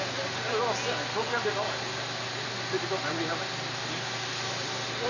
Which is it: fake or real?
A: real